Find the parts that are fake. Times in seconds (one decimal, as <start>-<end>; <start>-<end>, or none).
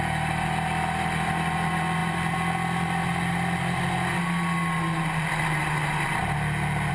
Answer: none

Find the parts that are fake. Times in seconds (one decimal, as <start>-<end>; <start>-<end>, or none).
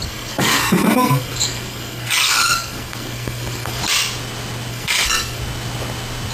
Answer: 0.0-3.8; 4.7-5.4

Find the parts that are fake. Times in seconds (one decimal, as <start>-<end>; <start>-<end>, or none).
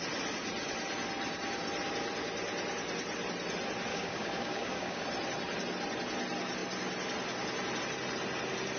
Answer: 3.9-5.0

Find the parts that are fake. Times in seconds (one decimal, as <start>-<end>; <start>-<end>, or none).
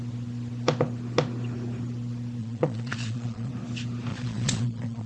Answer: 2.4-3.5; 4.1-5.1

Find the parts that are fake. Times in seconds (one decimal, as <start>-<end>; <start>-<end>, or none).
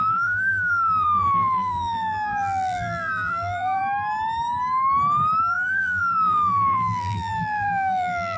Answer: 0.0-3.8; 5.4-8.4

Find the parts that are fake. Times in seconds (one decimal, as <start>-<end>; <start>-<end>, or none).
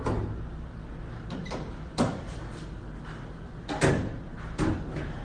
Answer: none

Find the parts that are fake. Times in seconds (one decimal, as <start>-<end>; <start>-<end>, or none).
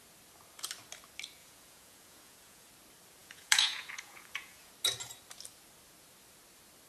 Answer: 1.4-2.7; 3.2-4.7